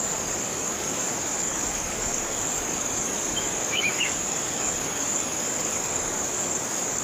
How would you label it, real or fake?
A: fake